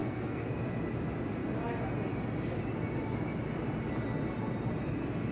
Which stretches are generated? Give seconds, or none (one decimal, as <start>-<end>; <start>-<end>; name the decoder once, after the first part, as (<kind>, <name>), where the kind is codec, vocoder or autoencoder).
0.0-0.5 (codec, SNAC)